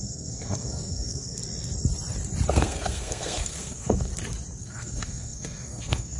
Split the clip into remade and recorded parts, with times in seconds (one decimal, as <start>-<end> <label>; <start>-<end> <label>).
0.0-1.4 remade; 1.4-2.5 recorded; 2.5-4.1 remade; 4.1-4.6 recorded; 4.6-6.2 remade